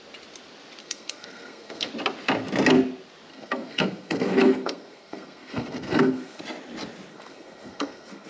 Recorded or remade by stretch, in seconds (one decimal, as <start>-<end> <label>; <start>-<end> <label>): 0.0-0.8 recorded; 0.8-1.9 remade; 1.9-3.3 recorded; 3.3-6.4 remade; 6.4-7.1 recorded; 7.1-8.3 remade